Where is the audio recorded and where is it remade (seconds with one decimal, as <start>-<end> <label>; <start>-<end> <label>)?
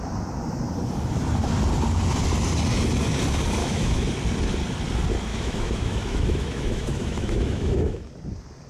0.0-3.6 recorded; 3.6-4.1 remade; 4.1-5.3 recorded; 5.3-8.1 remade; 8.1-8.7 recorded